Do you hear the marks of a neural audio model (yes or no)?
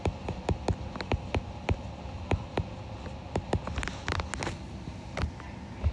no